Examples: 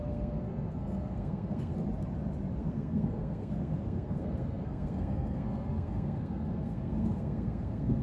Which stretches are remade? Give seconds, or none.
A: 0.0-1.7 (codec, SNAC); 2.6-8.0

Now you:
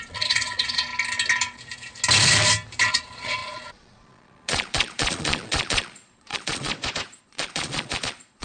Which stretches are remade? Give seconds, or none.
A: 0.0-0.9 (vocoder, Vocos); 2.9-6.7; 7.2-8.4

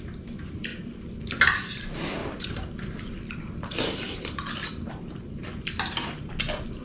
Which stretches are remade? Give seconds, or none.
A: 0.7-1.2 (vocoder, BigVGAN v2); 2.2-6.3